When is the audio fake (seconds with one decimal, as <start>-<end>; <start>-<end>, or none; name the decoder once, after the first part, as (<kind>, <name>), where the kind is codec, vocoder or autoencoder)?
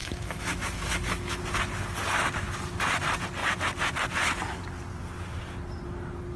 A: 0.0-1.4 (autoencoder, DAC-VAE)